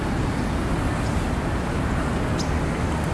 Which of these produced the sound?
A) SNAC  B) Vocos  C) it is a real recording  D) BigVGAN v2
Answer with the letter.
C